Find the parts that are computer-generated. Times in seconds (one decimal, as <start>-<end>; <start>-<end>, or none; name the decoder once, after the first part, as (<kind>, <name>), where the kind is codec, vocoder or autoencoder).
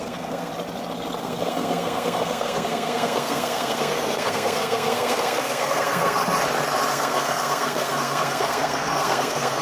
0.0-0.5 (codec, SNAC); 1.2-6.2; 6.9-9.6